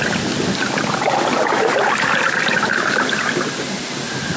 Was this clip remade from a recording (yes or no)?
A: no